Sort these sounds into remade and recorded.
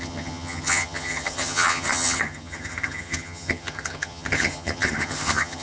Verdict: remade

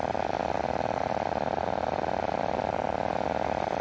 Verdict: recorded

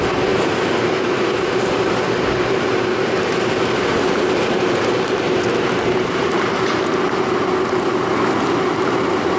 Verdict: recorded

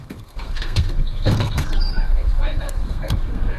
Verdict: remade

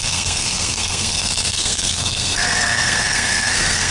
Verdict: remade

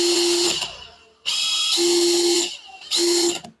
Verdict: recorded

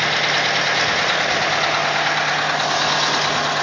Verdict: recorded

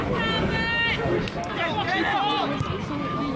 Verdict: recorded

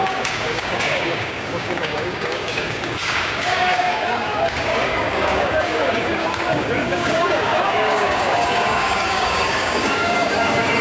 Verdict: remade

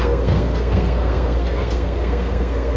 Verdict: remade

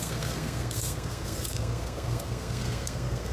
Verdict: remade